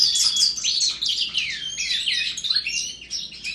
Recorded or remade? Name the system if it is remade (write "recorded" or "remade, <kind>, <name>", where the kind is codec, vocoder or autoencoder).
recorded